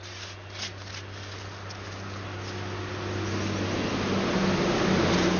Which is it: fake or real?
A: real